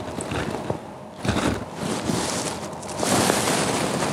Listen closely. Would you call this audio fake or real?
fake